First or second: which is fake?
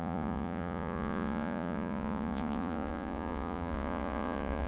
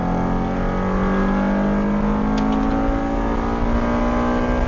first